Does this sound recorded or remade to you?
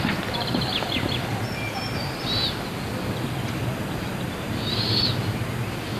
recorded